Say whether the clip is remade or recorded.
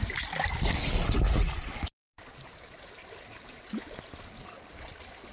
recorded